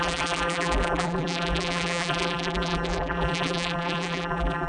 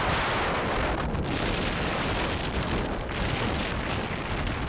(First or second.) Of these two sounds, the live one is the second